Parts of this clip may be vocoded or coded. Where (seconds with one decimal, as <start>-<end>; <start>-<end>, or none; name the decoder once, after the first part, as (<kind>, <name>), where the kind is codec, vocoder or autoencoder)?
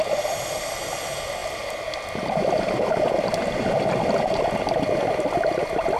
none